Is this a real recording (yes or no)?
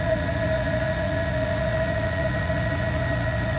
no